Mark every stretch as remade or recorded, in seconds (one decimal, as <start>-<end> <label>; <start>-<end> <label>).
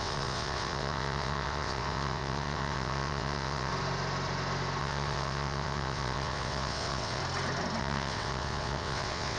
0.0-3.7 remade; 3.7-4.8 recorded; 4.8-7.2 remade; 7.2-7.8 recorded; 7.8-9.4 remade